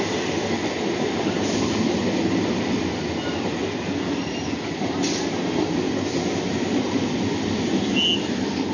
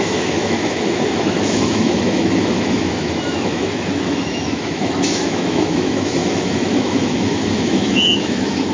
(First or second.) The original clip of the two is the first